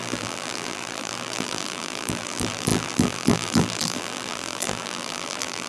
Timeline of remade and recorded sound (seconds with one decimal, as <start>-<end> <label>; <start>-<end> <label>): 0.0-5.7 remade

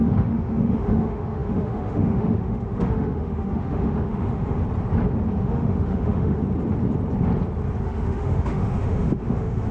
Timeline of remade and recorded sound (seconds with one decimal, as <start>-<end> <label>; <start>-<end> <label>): 0.0-4.6 remade; 4.6-5.4 recorded; 5.4-6.4 remade; 6.4-7.8 recorded; 7.8-9.7 remade

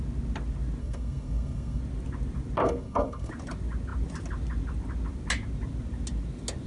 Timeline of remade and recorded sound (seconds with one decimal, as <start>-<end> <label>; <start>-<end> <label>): 0.0-0.8 recorded; 0.8-1.8 remade; 1.8-2.6 recorded; 2.6-3.3 remade; 3.3-6.7 recorded

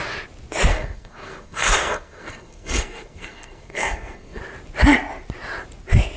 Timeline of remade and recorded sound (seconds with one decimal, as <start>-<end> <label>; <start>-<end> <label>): 0.0-0.7 recorded; 0.7-4.4 remade; 4.4-6.2 recorded